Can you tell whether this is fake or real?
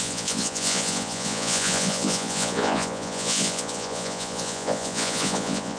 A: fake